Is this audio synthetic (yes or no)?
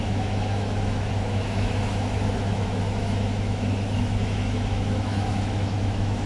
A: yes